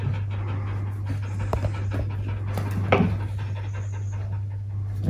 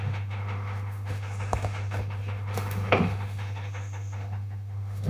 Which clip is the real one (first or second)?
first